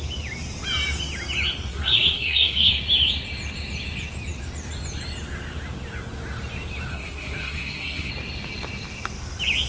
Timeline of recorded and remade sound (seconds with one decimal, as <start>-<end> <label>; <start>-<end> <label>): 0.0-1.7 recorded; 1.7-2.7 remade; 2.7-6.9 recorded; 6.9-8.1 remade; 8.1-9.7 recorded